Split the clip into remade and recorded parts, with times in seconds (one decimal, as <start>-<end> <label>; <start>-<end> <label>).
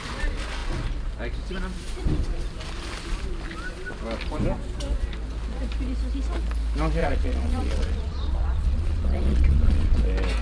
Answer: 0.0-7.0 recorded; 7.0-10.0 remade; 10.0-10.4 recorded